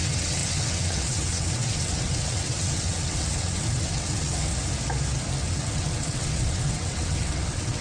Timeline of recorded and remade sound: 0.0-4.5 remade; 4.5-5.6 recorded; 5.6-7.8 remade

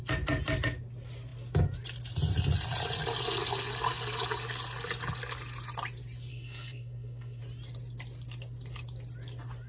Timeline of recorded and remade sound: 0.0-6.3 recorded; 6.3-7.4 remade; 7.4-9.7 recorded

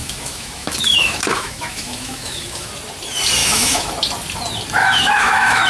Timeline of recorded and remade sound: 0.0-2.7 remade; 2.7-3.4 recorded; 3.4-3.9 remade; 3.9-4.8 recorded; 4.8-5.7 remade

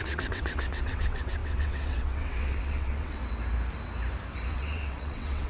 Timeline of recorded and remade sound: 0.0-3.2 remade; 3.2-4.5 recorded; 4.5-5.5 remade

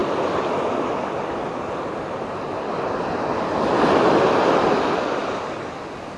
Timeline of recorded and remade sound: 0.0-6.2 recorded